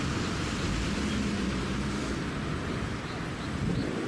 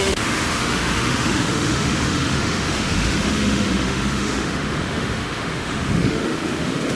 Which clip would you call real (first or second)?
first